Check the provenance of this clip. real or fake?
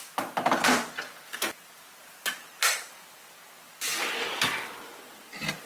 real